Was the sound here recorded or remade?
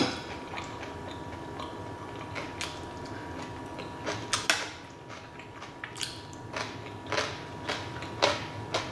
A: recorded